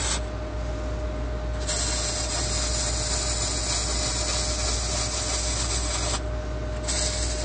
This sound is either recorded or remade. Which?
recorded